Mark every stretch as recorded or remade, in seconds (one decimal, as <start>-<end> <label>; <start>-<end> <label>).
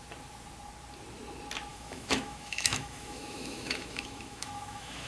0.0-1.7 recorded; 1.7-5.1 remade